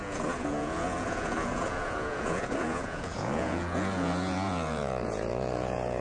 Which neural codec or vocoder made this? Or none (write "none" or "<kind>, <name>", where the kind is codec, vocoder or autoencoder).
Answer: vocoder, Vocos